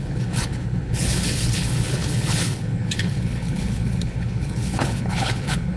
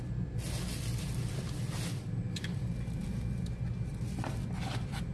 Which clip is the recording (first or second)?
second